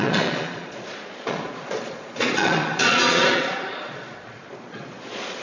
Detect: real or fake fake